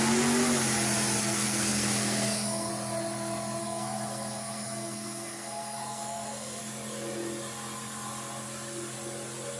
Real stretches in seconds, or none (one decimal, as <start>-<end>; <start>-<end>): 0.0-1.2; 2.7-3.6; 6.6-9.6